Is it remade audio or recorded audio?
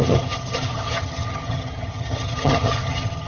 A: remade